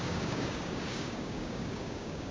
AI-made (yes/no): yes